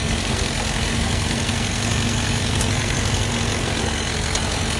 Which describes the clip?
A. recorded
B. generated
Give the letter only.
B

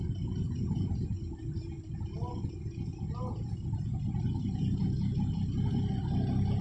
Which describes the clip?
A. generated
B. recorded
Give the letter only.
B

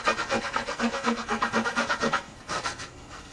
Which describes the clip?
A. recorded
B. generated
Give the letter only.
B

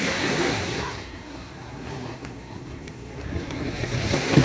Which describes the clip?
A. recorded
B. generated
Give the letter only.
B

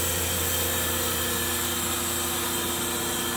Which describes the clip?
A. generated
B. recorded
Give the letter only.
B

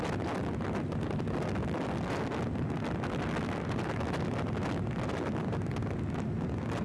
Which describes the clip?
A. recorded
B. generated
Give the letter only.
A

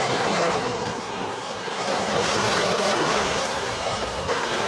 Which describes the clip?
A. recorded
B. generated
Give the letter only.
B